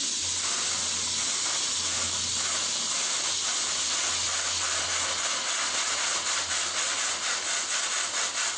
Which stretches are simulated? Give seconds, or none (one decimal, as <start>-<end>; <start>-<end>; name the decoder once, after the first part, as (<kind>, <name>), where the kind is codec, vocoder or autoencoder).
none

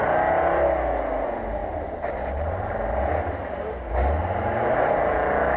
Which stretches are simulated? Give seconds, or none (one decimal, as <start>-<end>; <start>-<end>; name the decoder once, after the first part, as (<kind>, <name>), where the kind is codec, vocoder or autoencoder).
1.6-3.1 (vocoder, BigVGAN v2)